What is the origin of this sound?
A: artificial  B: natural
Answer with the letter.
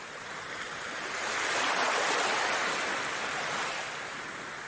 B